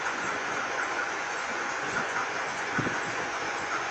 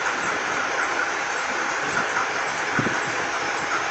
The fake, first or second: first